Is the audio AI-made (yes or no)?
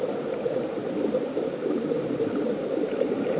no